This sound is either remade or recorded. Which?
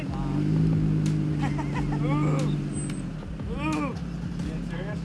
recorded